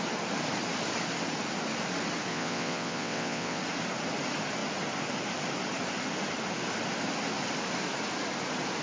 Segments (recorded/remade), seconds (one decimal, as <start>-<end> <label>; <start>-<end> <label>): 0.0-2.3 recorded; 2.3-3.6 remade; 3.6-8.8 recorded